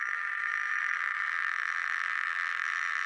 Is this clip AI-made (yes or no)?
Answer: yes